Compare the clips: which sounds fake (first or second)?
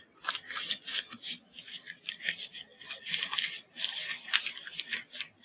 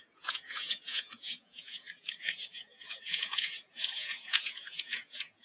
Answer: second